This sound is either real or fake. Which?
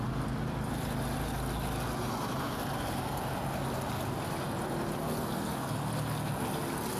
real